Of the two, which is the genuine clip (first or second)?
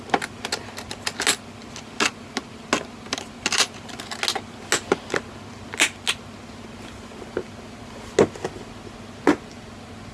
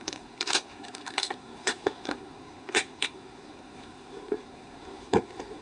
first